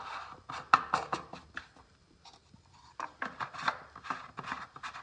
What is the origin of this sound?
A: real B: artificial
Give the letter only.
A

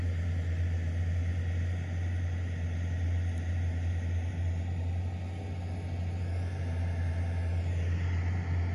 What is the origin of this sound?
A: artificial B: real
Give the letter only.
B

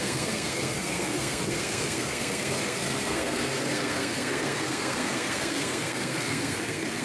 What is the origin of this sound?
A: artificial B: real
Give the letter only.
A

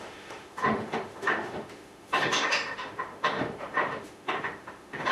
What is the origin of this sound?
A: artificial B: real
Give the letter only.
A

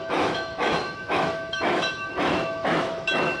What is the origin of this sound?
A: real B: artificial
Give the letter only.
B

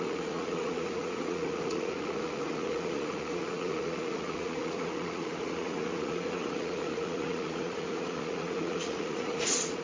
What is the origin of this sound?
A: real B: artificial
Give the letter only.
B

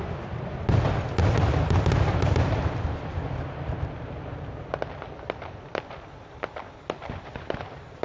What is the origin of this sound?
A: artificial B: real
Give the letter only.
B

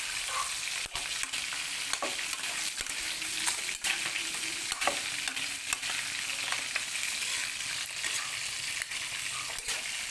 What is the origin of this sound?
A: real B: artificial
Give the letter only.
A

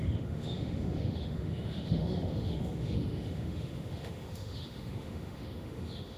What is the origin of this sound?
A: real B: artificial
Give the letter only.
B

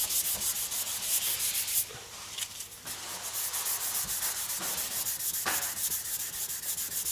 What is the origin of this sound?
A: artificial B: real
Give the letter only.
B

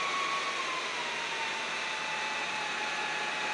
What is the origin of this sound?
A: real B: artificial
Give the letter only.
A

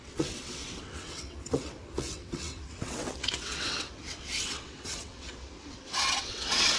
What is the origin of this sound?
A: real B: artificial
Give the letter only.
B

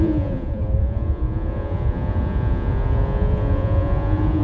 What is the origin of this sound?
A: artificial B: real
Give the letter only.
A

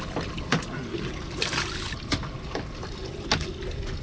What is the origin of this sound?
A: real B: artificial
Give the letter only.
A